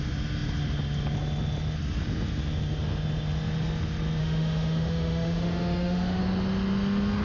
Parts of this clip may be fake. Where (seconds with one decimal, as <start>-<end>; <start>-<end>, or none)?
4.2-6.2